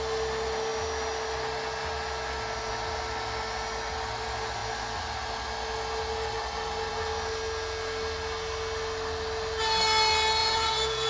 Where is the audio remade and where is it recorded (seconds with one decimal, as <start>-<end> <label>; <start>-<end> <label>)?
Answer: 0.0-10.4 recorded; 10.4-11.1 remade